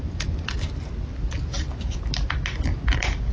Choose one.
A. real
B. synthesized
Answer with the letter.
A